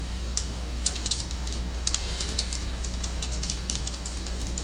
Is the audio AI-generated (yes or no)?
yes